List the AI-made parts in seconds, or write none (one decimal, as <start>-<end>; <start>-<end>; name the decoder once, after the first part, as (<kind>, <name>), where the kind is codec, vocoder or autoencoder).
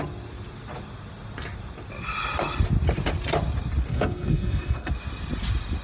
3.9-4.9 (codec, SNAC)